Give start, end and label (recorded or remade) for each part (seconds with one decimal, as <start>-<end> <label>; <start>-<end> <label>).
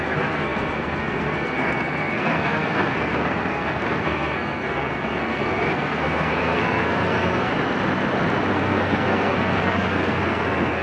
0.0-7.5 remade; 7.5-8.5 recorded; 8.5-10.8 remade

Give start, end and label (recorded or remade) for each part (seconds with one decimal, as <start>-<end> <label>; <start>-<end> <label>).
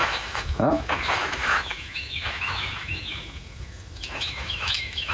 0.0-5.1 remade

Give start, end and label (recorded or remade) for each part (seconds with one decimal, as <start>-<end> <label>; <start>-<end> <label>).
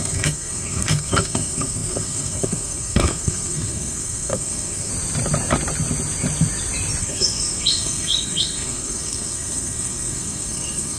0.0-4.9 remade; 4.9-7.0 recorded; 7.0-11.0 remade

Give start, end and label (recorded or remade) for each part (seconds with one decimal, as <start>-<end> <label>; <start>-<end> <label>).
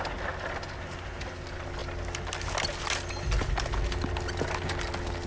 0.0-5.3 recorded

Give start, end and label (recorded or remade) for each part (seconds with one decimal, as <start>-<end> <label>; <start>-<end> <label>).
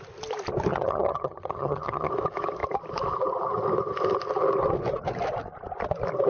0.0-0.7 recorded; 0.7-2.1 remade; 2.1-6.3 recorded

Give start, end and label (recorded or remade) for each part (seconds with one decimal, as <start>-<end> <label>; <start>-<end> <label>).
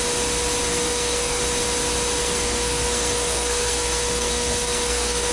0.0-0.7 recorded; 0.7-1.4 remade; 1.4-2.2 recorded; 2.2-5.3 remade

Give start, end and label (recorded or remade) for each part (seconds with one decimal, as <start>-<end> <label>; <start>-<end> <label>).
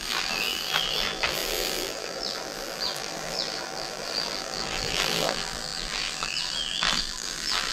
0.0-7.7 remade